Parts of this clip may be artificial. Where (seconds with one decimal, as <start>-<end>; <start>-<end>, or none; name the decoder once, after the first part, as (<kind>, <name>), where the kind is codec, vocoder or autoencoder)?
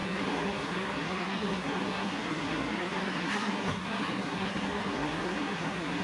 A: 0.0-6.0 (codec, SNAC)